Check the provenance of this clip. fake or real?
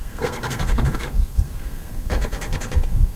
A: fake